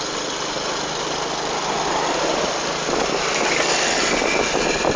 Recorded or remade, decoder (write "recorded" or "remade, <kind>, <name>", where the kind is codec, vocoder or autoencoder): recorded